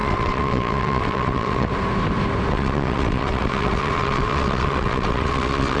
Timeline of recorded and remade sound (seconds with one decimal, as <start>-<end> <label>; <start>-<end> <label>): 0.0-1.7 remade; 1.7-2.5 recorded; 2.5-5.8 remade